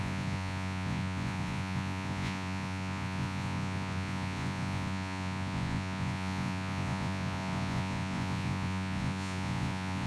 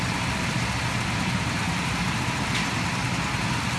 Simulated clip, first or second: first